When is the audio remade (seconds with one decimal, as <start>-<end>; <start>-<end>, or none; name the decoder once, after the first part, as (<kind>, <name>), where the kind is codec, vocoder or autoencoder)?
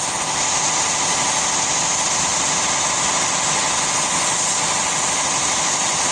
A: none